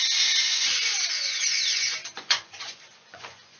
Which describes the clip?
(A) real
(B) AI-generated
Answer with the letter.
B